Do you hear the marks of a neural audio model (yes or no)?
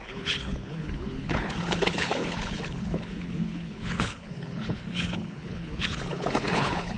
yes